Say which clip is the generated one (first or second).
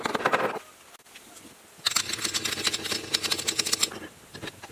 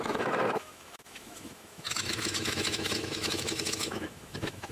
second